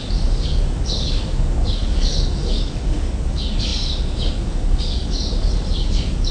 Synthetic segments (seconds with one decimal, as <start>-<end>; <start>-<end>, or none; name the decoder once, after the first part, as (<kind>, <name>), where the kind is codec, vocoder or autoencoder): 0.0-6.3 (codec, DAC)